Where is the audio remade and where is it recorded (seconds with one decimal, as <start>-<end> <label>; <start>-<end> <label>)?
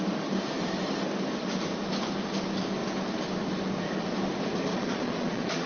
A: 0.0-4.7 recorded; 4.7-5.7 remade